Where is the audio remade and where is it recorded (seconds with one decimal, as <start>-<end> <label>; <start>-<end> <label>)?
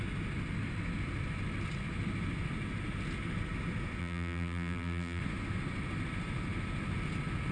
0.0-4.0 recorded; 4.0-5.2 remade; 5.2-7.5 recorded